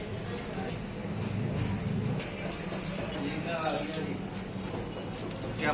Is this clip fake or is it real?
real